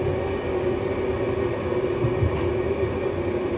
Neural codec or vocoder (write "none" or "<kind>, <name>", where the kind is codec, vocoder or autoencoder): none